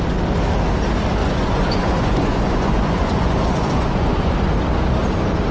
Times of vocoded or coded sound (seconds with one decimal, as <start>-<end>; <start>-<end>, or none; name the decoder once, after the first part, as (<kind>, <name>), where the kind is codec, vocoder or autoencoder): 1.2-4.5 (vocoder, Vocos)